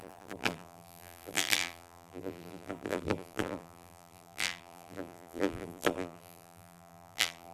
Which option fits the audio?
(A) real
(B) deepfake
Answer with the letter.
B